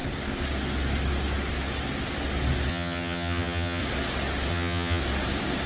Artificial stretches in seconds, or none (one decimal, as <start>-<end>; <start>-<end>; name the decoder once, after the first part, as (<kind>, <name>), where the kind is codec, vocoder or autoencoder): 2.7-3.8 (vocoder, HiFi-GAN); 4.5-5.0